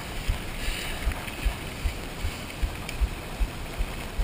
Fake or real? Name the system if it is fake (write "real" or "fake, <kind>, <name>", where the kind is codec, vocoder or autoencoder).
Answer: real